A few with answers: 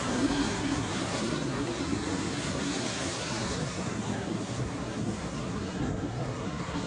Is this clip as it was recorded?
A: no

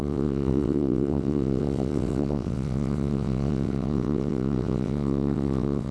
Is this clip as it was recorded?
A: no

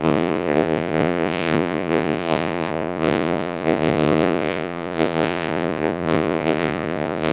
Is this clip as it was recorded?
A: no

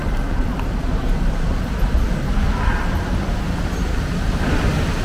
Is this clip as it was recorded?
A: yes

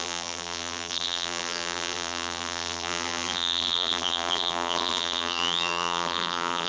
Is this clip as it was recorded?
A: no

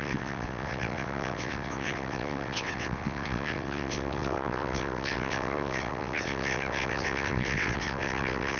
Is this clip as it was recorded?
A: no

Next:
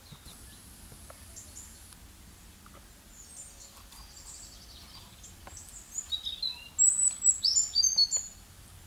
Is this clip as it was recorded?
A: yes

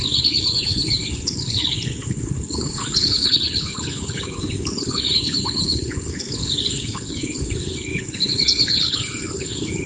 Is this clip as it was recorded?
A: no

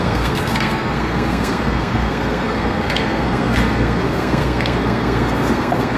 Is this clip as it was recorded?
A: no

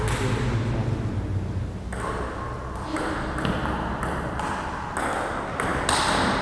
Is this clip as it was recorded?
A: yes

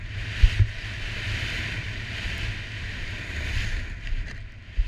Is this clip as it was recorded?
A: yes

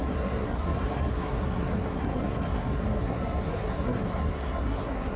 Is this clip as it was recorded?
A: no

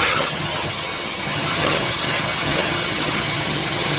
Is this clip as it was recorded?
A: no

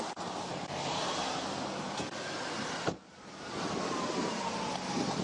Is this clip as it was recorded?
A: yes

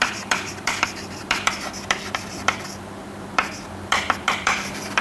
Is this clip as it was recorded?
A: no